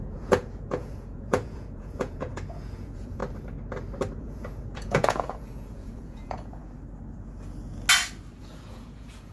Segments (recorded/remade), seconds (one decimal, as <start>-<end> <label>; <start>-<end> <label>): 0.0-3.2 remade; 3.2-4.2 recorded; 4.2-6.6 remade; 6.6-8.4 recorded; 8.4-9.3 remade